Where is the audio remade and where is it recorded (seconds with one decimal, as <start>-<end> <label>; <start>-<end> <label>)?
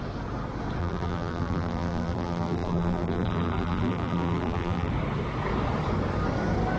0.0-0.8 recorded; 0.8-4.9 remade; 4.9-6.8 recorded